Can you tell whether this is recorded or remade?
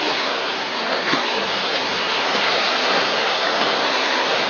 remade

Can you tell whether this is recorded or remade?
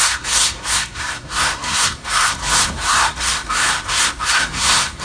remade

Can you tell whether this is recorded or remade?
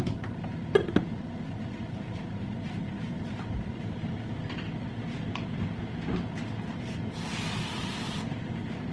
recorded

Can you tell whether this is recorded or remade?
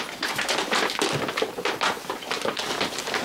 remade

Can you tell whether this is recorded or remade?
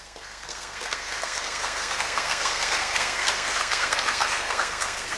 remade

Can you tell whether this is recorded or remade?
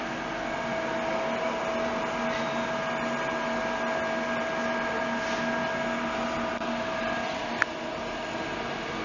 recorded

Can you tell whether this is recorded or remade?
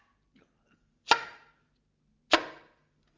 recorded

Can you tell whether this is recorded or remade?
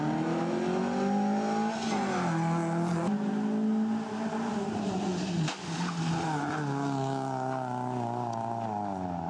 recorded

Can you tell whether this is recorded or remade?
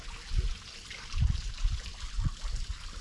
recorded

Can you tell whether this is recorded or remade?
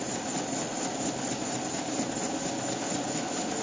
recorded